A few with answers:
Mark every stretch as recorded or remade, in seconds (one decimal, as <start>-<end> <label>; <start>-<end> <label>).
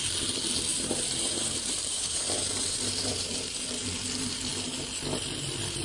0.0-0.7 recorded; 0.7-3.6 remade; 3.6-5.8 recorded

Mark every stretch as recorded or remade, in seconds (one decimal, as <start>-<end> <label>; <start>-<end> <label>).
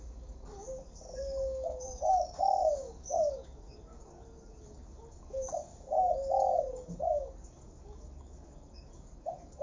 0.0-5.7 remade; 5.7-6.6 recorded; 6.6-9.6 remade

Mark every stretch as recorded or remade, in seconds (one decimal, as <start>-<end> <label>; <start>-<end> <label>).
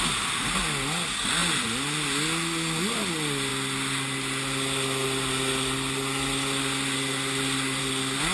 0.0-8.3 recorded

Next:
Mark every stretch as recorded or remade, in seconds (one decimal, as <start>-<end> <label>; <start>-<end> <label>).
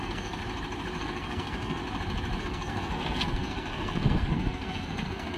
0.0-0.4 remade; 0.4-1.0 recorded; 1.0-1.8 remade; 1.8-2.4 recorded; 2.4-5.4 remade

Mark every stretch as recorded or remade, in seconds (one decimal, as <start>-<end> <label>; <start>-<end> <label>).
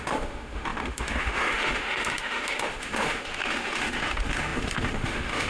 0.0-5.5 remade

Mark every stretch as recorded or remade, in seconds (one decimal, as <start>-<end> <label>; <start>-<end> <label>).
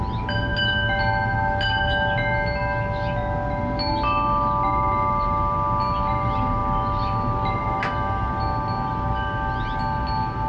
0.0-10.5 recorded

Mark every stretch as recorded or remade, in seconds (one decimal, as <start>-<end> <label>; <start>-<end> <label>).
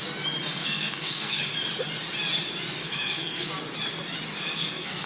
0.0-0.6 recorded; 0.6-1.4 remade; 1.4-2.8 recorded; 2.8-3.5 remade; 3.5-4.3 recorded; 4.3-5.1 remade